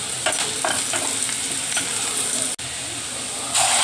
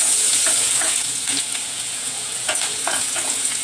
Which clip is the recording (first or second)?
first